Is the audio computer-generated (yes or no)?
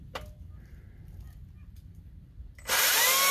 no